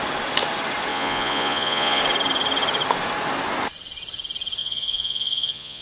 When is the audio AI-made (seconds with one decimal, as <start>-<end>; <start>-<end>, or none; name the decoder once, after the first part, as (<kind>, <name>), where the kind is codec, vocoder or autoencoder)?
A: 0.9-2.0 (vocoder, Vocos); 4.6-5.8